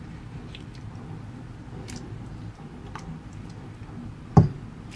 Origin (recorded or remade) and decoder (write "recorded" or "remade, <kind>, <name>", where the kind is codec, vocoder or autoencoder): remade, vocoder, BigVGAN v2